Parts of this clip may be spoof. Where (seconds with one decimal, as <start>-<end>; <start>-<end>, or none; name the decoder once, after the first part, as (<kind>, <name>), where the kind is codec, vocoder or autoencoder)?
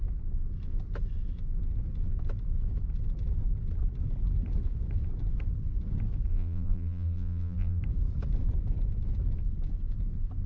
6.3-7.8 (vocoder, BigVGAN v2)